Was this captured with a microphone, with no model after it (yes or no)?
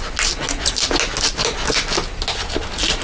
yes